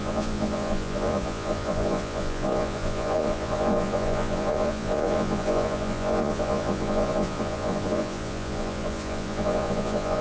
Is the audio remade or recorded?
remade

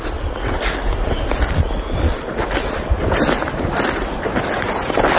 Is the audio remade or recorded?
recorded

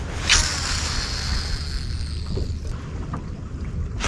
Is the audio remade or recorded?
recorded